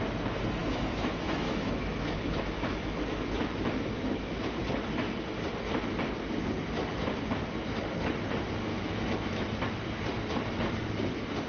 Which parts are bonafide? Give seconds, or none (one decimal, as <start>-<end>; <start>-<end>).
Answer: 0.0-0.6; 4.6-8.7; 9.4-11.5